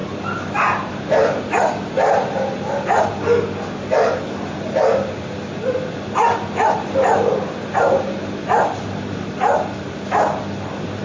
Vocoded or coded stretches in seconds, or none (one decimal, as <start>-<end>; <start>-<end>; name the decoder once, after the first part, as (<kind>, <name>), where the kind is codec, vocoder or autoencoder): none